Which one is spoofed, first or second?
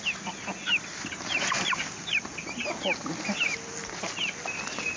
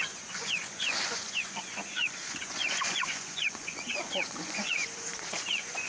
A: second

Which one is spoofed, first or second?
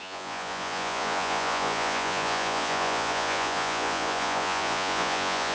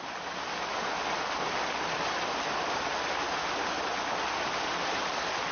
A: first